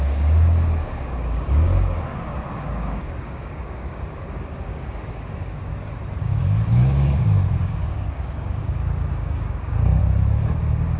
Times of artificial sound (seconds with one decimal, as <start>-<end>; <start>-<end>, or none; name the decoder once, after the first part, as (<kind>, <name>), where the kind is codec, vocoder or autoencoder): 0.0-5.7 (codec, DAC); 6.2-10.0; 10.6-11.0